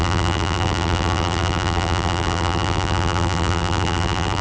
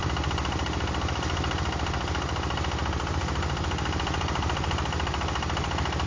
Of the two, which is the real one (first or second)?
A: second